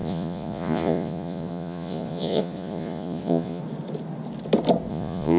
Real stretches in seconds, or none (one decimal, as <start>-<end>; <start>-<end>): 3.6-4.9